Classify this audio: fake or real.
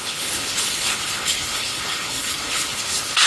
fake